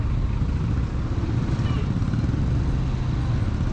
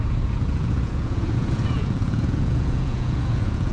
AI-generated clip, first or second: second